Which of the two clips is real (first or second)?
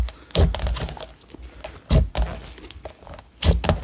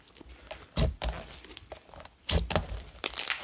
first